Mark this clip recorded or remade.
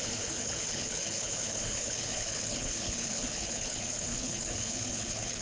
remade